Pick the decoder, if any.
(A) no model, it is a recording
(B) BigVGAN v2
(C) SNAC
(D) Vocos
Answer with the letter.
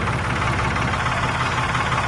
A